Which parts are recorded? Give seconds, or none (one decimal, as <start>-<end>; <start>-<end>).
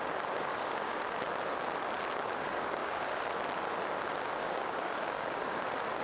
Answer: 0.0-0.5; 1.0-2.8; 3.3-4.4; 5.6-6.0